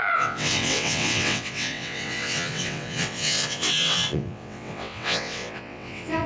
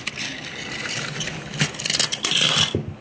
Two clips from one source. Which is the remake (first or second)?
first